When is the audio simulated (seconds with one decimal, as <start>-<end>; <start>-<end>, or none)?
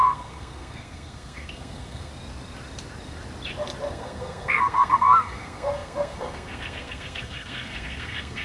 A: 0.0-2.1; 3.9-8.4